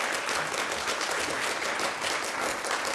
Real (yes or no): yes